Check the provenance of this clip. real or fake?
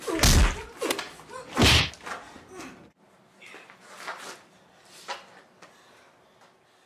real